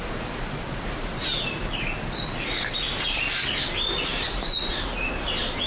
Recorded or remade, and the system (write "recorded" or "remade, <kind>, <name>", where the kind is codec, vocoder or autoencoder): recorded